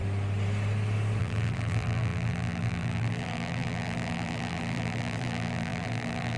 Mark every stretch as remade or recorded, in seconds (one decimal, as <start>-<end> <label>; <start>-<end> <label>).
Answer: 0.0-1.2 recorded; 1.2-6.4 remade